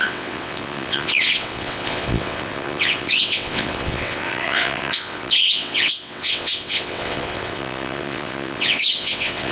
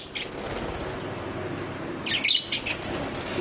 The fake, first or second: first